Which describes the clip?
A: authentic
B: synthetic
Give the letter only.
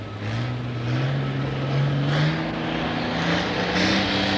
A